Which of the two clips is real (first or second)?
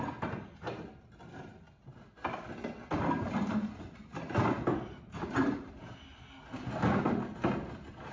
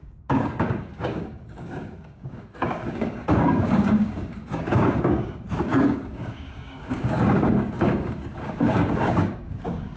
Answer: first